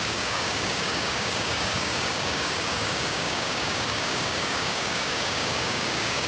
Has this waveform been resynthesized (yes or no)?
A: yes